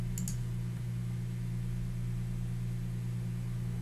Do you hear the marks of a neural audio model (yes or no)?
no